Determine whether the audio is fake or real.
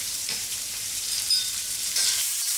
fake